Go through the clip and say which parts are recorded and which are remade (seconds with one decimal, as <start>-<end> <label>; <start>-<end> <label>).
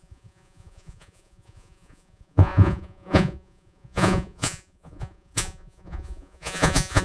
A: 0.0-7.0 remade